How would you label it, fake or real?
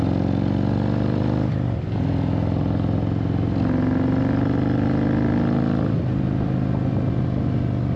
real